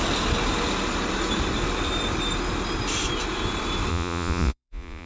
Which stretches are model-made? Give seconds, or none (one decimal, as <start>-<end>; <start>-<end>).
3.9-5.1